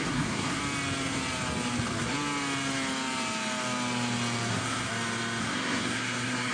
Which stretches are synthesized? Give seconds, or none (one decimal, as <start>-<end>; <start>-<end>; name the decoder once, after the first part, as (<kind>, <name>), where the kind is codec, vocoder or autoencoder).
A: 0.0-0.6 (codec, SNAC); 4.5-4.9; 5.4-6.5